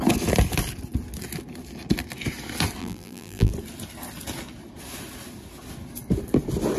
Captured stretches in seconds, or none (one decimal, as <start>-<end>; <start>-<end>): 0.0-2.8; 3.5-6.8